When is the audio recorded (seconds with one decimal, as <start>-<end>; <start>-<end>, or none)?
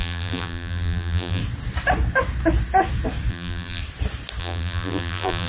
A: 1.4-3.3; 3.8-4.4